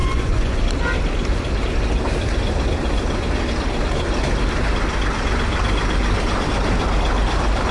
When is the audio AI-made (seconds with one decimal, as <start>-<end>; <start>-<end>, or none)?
0.0-0.6